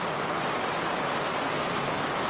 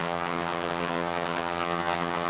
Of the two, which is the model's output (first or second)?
second